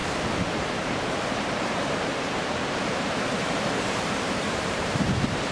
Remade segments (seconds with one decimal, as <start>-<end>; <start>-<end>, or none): 0.0-5.5